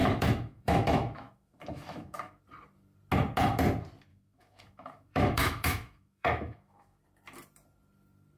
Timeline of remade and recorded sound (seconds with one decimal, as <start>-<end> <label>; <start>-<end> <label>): 0.0-2.4 remade; 2.4-4.1 recorded; 4.1-7.0 remade; 7.0-8.4 recorded

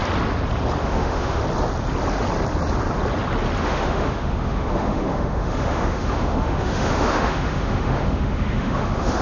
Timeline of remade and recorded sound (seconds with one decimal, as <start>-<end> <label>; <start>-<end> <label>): 0.0-0.8 recorded; 0.8-1.4 remade; 1.4-3.6 recorded; 3.6-9.2 remade